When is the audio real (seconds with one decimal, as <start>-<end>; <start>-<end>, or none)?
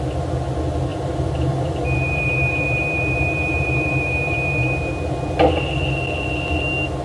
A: 0.0-0.9; 4.9-7.0